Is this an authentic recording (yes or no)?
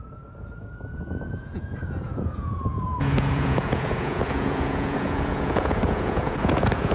no